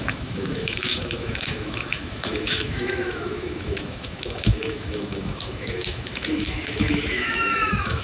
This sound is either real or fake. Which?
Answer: fake